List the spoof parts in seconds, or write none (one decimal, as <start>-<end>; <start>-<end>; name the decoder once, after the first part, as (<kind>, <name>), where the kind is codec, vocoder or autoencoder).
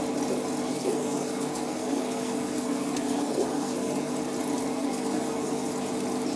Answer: 0.7-4.1 (codec, SNAC); 4.7-5.7